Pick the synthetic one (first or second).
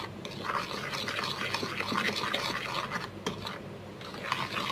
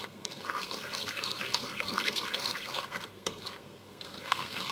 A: second